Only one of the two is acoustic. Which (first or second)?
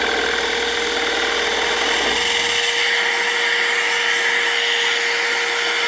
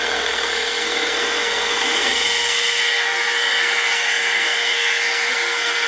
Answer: first